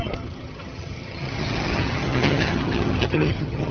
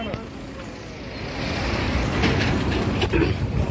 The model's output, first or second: first